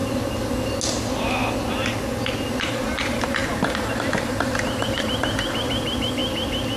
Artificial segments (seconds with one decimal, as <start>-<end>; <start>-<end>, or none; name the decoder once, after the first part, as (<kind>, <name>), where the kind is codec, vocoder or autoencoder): 2.6-6.2 (vocoder, BigVGAN v2)